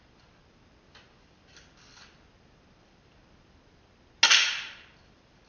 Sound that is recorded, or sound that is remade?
recorded